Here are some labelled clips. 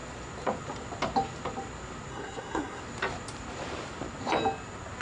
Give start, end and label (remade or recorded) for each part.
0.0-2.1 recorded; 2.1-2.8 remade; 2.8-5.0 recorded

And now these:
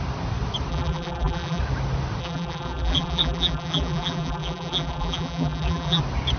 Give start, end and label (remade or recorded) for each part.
0.0-0.7 recorded; 0.7-1.6 remade; 1.6-2.2 recorded; 2.2-6.0 remade; 6.0-6.4 recorded

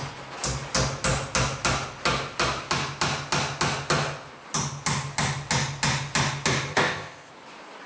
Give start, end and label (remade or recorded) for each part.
0.0-6.7 recorded; 6.7-7.3 remade; 7.3-7.9 recorded

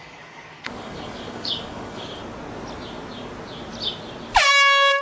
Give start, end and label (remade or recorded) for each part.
0.0-2.2 remade; 2.2-5.0 recorded

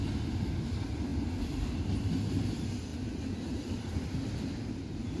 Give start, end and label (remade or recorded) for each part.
0.0-1.1 recorded; 1.1-2.1 remade; 2.1-2.9 recorded; 2.9-4.7 remade; 4.7-5.2 recorded

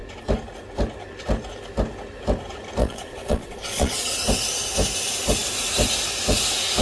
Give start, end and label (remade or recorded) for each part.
0.0-2.8 recorded; 2.8-4.1 remade; 4.1-6.8 recorded